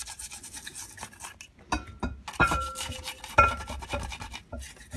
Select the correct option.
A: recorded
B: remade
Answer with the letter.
A